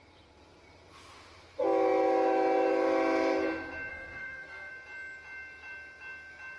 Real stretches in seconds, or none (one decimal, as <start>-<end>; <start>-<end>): 0.0-3.9; 4.7-6.6